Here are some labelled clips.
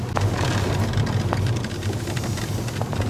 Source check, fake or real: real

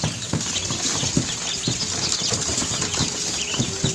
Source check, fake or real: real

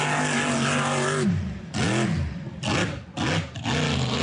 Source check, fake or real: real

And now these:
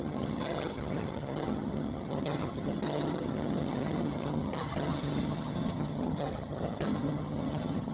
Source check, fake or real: fake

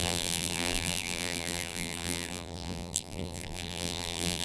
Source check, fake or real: fake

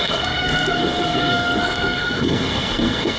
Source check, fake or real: fake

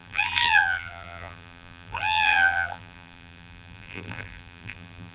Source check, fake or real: fake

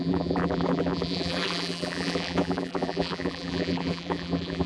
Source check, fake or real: fake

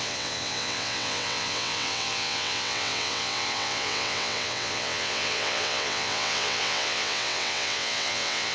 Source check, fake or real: fake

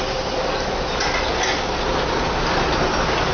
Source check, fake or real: real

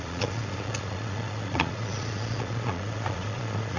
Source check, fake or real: fake